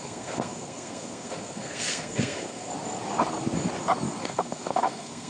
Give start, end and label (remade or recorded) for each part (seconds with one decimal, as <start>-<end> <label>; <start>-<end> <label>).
0.0-2.7 remade; 2.7-4.2 recorded; 4.2-5.3 remade